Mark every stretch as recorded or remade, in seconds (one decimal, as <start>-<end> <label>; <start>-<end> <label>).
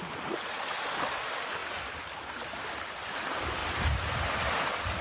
0.0-3.6 remade; 3.6-4.5 recorded; 4.5-5.0 remade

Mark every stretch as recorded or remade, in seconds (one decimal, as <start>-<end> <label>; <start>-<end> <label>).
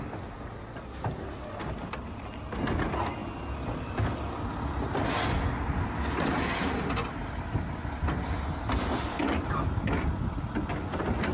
0.0-11.3 recorded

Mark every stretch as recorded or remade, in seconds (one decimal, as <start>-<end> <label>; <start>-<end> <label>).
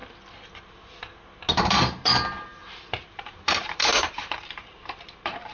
0.0-1.5 recorded; 1.5-5.5 remade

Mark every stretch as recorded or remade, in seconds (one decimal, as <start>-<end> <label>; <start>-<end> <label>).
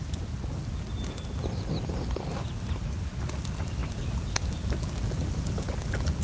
0.0-6.2 recorded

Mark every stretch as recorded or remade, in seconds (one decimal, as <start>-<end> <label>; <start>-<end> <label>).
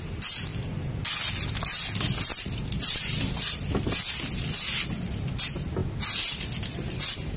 0.0-7.4 recorded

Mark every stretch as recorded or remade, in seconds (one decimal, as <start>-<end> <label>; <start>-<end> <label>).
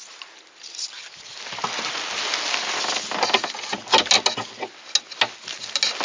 0.0-6.0 recorded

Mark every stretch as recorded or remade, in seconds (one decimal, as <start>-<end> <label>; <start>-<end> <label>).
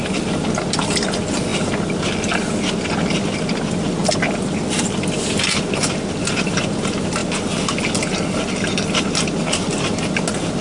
0.0-1.5 remade; 1.5-3.1 recorded; 3.1-7.2 remade; 7.2-10.6 recorded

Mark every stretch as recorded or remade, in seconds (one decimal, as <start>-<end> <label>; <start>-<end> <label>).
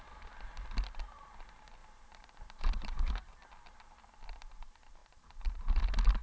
0.0-1.8 recorded; 1.8-3.1 remade; 3.1-5.0 recorded; 5.0-5.8 remade; 5.8-6.2 recorded